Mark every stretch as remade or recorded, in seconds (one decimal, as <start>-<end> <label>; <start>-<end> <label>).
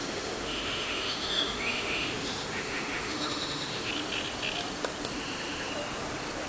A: 0.0-3.9 remade; 3.9-5.1 recorded; 5.1-5.7 remade; 5.7-6.5 recorded